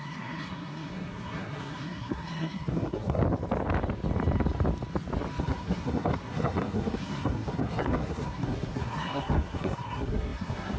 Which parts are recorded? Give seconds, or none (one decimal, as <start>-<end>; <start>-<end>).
3.2-5.4